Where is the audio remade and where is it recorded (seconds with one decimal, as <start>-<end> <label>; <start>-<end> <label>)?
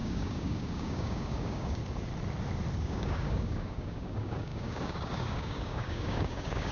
0.0-1.8 remade; 1.8-2.8 recorded; 2.8-6.7 remade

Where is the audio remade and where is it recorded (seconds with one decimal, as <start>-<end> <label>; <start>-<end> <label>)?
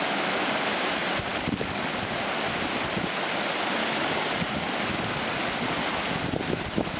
0.0-1.3 recorded; 1.3-2.1 remade; 2.1-3.8 recorded; 3.8-4.7 remade; 4.7-7.0 recorded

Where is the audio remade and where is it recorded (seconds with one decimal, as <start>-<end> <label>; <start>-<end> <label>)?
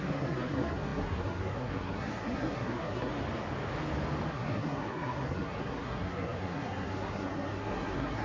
0.0-3.1 remade; 3.1-4.3 recorded; 4.3-8.2 remade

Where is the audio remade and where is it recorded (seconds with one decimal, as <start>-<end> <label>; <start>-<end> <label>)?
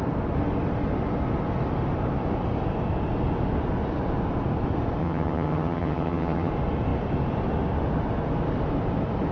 0.0-5.0 recorded; 5.0-6.5 remade; 6.5-9.3 recorded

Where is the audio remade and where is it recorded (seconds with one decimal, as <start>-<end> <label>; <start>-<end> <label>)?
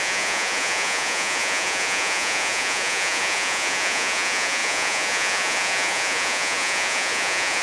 0.0-7.6 remade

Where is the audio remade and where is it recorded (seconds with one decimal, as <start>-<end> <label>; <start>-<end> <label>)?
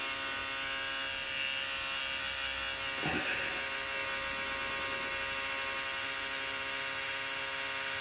0.0-8.0 recorded